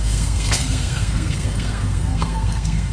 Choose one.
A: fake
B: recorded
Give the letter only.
A